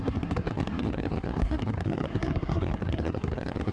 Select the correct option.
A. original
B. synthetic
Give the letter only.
B